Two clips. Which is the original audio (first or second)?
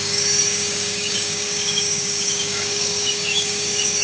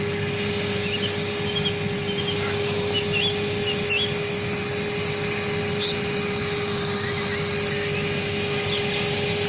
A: second